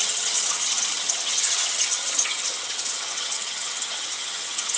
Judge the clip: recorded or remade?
remade